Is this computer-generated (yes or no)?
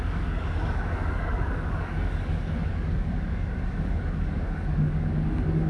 yes